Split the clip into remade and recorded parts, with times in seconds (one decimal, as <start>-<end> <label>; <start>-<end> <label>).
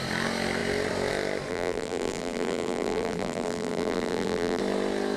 0.0-1.5 recorded; 1.5-4.6 remade; 4.6-5.2 recorded